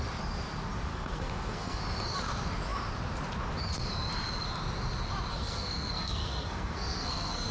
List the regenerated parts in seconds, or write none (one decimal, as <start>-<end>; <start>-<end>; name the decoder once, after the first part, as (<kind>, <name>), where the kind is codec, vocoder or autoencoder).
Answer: 0.9-1.8 (codec, SNAC); 5.3-7.5